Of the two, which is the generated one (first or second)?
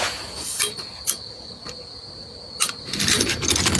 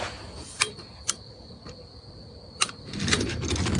second